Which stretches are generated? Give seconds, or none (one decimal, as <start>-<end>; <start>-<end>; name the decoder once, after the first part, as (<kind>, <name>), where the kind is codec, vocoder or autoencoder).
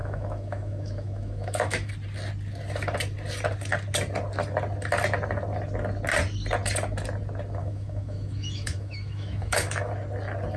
0.0-1.9 (autoencoder, DAC-VAE); 7.6-9.9